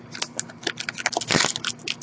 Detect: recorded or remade recorded